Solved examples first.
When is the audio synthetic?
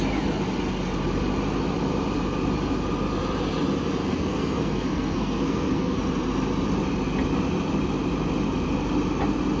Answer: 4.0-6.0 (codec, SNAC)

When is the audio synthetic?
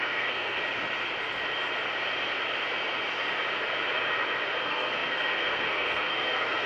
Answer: 0.0-0.6 (codec, SNAC); 4.6-6.7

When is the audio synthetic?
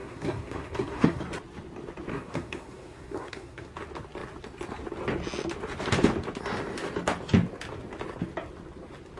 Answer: 0.0-1.2 (codec, SNAC); 2.1-3.7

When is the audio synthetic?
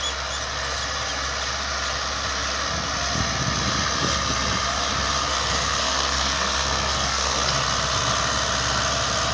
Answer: 5.3-7.5 (codec, SNAC)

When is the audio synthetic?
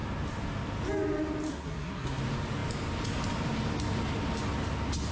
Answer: 1.5-2.2 (codec, SNAC)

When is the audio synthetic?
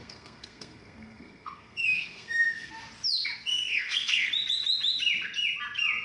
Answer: 0.0-2.7 (codec, SNAC); 3.5-4.3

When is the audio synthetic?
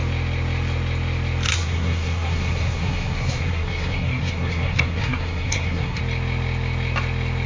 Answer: 1.5-6.0 (codec, SNAC)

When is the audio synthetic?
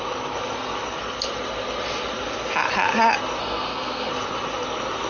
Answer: 3.4-4.1 (codec, SNAC)